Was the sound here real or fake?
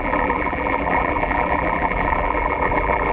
fake